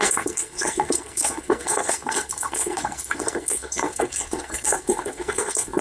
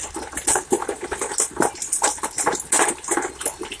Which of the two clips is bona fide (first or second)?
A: second